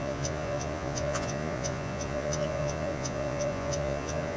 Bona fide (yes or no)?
no